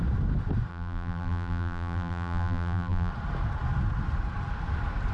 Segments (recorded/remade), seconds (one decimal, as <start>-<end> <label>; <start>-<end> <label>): 0.0-0.7 recorded; 0.7-3.1 remade; 3.1-5.1 recorded